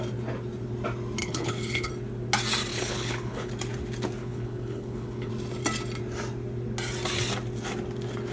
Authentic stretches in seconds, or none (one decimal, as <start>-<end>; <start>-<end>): 0.0-1.2; 1.9-2.7; 3.5-4.2; 5.3-8.3